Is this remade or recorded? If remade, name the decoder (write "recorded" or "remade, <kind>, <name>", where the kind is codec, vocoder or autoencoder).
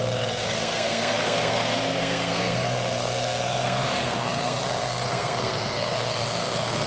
remade, codec, SNAC